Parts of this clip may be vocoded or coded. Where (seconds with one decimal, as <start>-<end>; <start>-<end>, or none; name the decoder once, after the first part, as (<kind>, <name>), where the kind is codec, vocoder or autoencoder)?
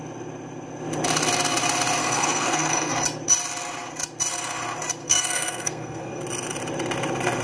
2.0-2.9 (codec, SNAC); 5.0-6.2